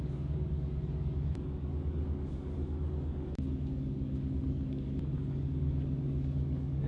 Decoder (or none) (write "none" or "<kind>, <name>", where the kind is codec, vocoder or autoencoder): codec, DAC